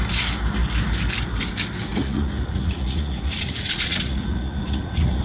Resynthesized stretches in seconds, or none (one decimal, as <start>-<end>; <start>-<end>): 1.9-5.2